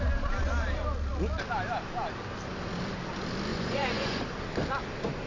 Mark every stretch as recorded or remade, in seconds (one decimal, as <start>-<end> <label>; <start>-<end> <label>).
0.0-3.5 recorded; 3.5-4.2 remade; 4.2-5.3 recorded